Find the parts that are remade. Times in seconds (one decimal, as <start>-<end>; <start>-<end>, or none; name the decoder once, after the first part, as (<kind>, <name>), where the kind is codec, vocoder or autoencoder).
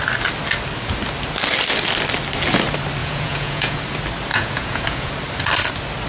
3.0-3.8 (vocoder, Vocos); 4.3-5.1